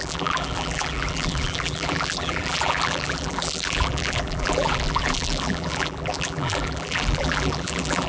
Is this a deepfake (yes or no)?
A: yes